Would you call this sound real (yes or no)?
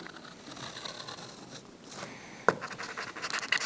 yes